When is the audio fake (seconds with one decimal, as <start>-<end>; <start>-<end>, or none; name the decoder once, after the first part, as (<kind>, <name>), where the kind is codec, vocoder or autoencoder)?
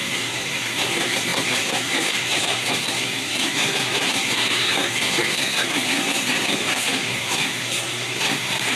0.0-8.8 (codec, SNAC)